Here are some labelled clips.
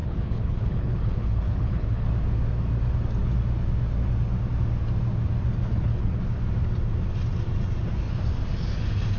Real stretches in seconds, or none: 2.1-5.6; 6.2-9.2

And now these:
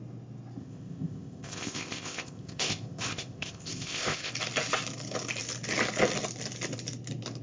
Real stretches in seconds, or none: 0.0-0.6; 4.3-7.4

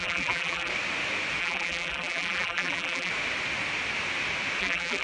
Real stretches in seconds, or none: 0.7-1.4; 3.1-4.6

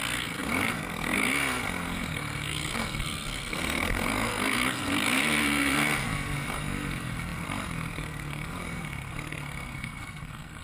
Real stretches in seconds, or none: none

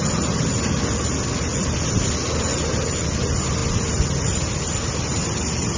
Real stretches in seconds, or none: 0.0-5.8

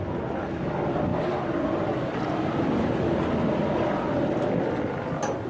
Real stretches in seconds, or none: 0.0-5.5

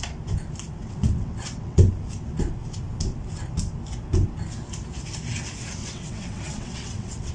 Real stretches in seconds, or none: 0.0-0.8; 1.8-5.8

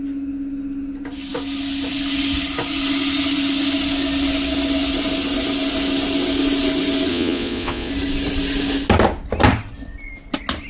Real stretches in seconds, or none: 0.0-7.1; 7.9-10.7